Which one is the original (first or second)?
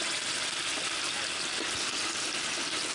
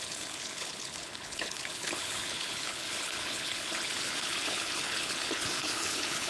first